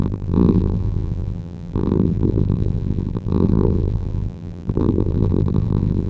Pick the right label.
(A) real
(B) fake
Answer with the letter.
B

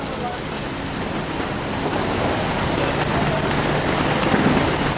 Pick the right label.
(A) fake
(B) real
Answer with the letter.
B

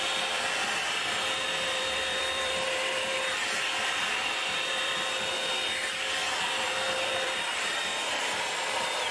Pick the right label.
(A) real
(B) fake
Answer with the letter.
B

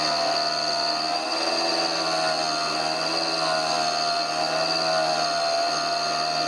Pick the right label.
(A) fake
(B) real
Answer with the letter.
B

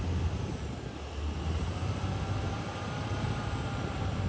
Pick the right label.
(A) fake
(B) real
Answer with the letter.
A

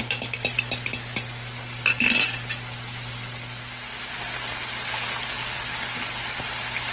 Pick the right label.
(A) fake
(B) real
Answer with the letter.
B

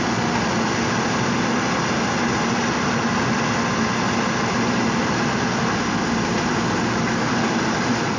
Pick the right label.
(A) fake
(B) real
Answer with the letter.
B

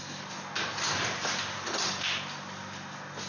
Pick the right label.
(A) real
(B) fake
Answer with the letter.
A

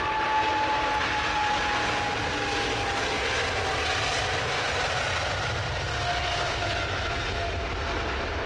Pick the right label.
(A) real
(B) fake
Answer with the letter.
A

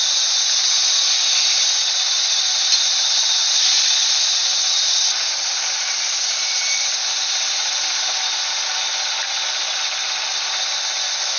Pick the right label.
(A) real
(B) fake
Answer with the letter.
A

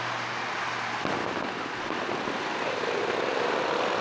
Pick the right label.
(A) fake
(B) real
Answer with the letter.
B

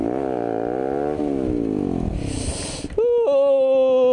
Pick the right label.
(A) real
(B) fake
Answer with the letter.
A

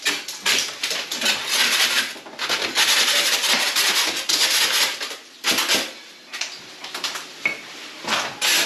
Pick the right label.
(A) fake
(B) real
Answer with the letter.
B